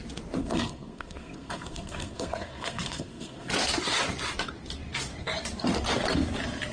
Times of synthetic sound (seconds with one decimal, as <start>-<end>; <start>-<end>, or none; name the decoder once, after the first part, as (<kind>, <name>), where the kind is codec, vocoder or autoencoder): 0.4-3.5 (codec, SNAC)